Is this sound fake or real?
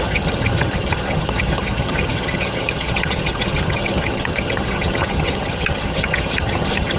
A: fake